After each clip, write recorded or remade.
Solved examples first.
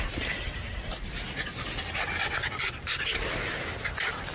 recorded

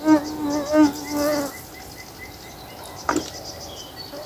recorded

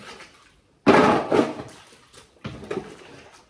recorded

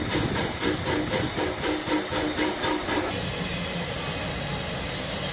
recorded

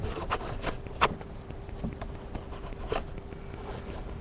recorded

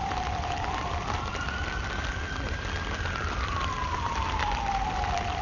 remade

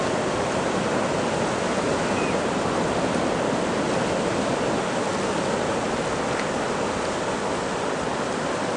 recorded